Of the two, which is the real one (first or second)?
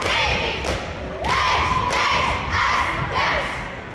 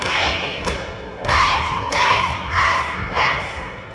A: first